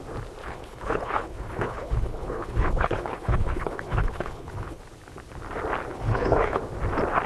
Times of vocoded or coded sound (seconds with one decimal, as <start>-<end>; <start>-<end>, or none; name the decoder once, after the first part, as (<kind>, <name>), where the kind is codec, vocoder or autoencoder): 0.4-4.8 (codec, HILCodec); 5.9-6.6